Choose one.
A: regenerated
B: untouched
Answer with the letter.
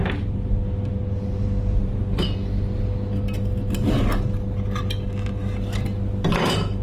B